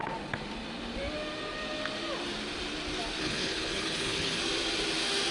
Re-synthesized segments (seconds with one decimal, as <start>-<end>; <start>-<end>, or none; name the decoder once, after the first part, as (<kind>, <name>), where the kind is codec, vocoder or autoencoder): 3.2-4.4 (codec, HILCodec)